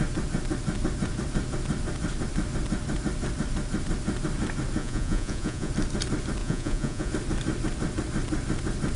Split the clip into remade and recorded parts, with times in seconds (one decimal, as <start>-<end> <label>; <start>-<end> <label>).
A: 0.0-4.8 recorded; 4.8-5.7 remade; 5.7-6.4 recorded; 6.4-7.1 remade; 7.1-9.0 recorded